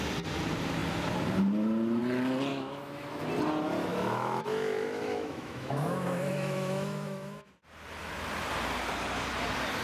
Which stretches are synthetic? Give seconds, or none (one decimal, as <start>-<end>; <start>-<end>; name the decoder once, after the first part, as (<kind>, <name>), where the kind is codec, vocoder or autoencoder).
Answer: 2.5-3.3 (autoencoder, DAC-VAE); 3.9-7.5